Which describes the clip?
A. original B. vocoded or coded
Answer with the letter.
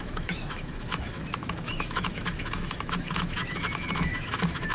B